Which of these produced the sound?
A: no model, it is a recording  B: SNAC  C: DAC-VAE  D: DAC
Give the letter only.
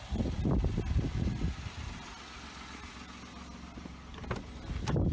A